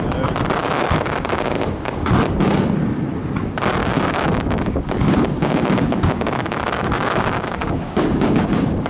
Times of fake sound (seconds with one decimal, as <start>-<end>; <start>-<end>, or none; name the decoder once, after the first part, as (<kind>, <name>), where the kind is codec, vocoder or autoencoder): 0.6-2.1 (codec, DAC); 3.8-8.9